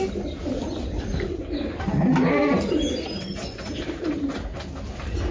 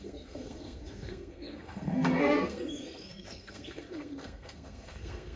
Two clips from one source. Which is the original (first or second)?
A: first